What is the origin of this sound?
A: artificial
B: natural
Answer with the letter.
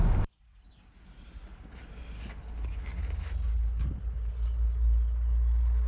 B